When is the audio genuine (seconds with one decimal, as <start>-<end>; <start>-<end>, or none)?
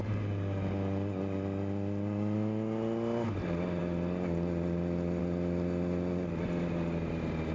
0.0-7.5